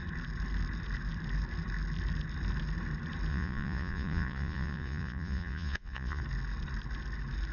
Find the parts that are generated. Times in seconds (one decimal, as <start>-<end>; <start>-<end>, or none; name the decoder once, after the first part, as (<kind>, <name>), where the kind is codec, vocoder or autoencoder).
3.3-6.2 (vocoder, Vocos)